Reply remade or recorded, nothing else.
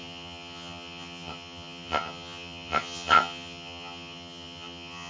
remade